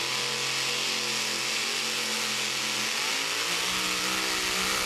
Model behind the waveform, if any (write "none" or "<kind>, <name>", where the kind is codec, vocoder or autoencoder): none